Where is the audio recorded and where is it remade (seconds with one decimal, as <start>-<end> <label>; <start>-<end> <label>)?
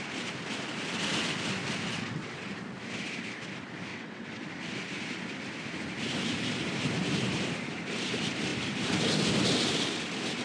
0.0-1.9 recorded; 1.9-2.5 remade; 2.5-3.9 recorded; 3.9-4.4 remade; 4.4-10.4 recorded